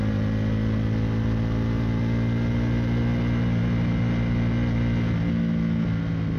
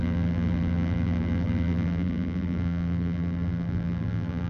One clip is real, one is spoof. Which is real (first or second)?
first